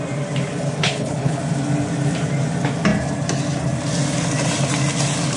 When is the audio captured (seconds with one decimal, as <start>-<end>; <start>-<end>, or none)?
0.0-0.8; 1.4-5.4